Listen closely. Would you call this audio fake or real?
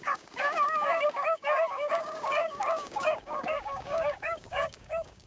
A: fake